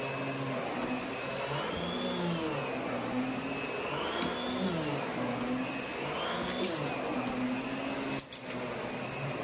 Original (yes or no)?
yes